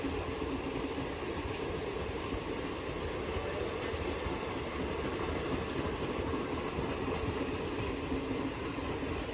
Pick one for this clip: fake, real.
real